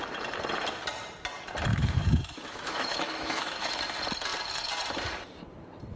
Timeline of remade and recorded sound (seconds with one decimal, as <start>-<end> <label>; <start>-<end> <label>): 0.0-1.7 recorded; 1.7-3.7 remade; 3.7-6.0 recorded